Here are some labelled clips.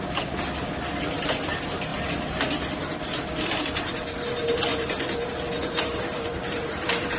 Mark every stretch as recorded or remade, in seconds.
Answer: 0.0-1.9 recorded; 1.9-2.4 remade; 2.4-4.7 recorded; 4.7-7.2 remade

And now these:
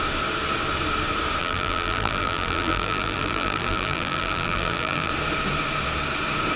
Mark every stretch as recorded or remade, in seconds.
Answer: 0.0-1.4 recorded; 1.4-5.1 remade; 5.1-6.6 recorded

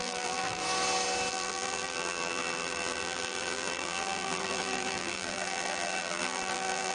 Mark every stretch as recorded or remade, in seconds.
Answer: 0.0-0.6 remade; 0.6-1.3 recorded; 1.3-6.9 remade

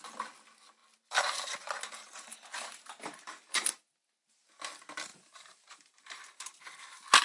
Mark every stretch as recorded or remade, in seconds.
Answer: 0.0-0.8 recorded; 0.8-3.8 remade; 3.8-5.1 recorded; 5.1-6.6 remade; 6.6-7.2 recorded